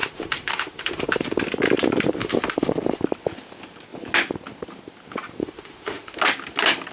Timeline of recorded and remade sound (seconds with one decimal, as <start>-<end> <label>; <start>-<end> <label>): 0.0-1.4 remade; 1.4-2.2 recorded; 2.2-3.0 remade; 3.0-5.4 recorded; 5.4-6.2 remade; 6.2-6.9 recorded